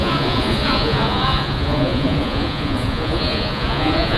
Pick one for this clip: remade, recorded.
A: remade